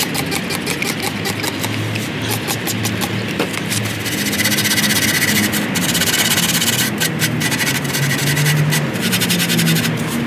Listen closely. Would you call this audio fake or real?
real